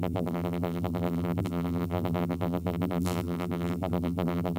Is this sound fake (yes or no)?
yes